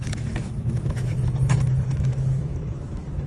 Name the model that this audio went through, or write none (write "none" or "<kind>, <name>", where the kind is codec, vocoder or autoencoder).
autoencoder, DAC-VAE